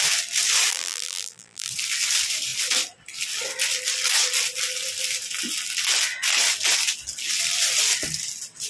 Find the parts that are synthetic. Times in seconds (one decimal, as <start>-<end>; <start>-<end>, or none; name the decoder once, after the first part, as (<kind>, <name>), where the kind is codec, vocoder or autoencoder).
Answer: 0.7-1.7 (vocoder, BigVGAN v2)